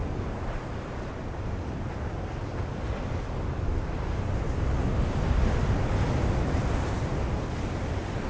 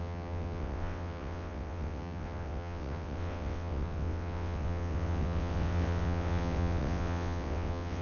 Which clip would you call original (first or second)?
first